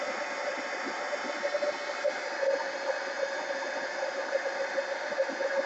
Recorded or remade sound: recorded